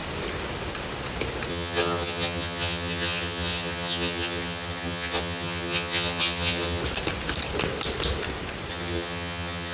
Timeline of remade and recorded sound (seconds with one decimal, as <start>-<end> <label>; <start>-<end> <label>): 0.0-1.5 recorded; 1.5-6.8 remade; 6.8-8.7 recorded; 8.7-9.7 remade